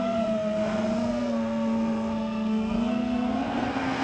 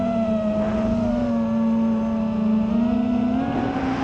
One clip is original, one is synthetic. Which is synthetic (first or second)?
first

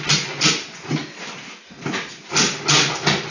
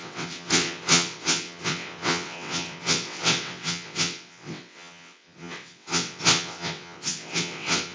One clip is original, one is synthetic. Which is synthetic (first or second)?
second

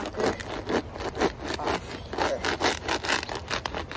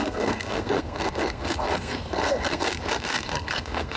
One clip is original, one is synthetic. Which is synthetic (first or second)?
second